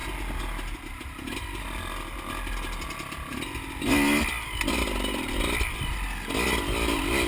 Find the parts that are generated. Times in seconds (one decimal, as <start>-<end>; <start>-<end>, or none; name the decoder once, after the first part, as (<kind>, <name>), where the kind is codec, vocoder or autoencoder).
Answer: none